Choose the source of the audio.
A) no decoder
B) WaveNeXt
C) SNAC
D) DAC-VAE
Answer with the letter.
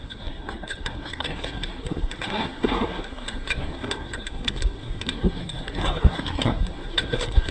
C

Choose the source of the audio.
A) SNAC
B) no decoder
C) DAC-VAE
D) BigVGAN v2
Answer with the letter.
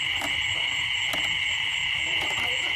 B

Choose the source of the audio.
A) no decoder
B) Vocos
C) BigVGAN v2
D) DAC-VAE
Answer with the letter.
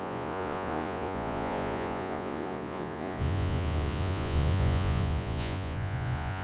B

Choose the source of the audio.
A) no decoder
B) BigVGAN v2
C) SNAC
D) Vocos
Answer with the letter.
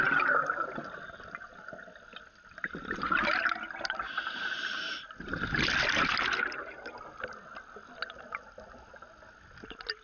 A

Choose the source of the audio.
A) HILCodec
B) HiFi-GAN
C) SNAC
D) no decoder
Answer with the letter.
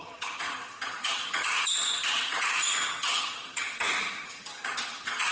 B